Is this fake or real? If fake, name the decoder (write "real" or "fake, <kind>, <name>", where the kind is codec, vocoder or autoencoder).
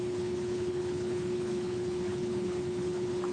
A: fake, codec, HILCodec